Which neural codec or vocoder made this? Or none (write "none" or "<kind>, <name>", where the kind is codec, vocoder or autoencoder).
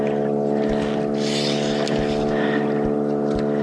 none